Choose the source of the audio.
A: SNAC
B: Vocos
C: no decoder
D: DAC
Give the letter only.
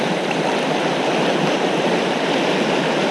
C